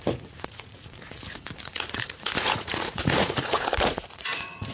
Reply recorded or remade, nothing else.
remade